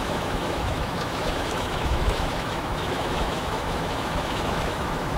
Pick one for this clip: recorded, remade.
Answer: remade